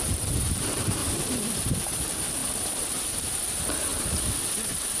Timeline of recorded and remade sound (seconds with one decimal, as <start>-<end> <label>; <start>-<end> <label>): 0.0-1.0 remade; 1.0-2.0 recorded; 2.0-3.9 remade; 3.9-4.5 recorded; 4.5-5.0 remade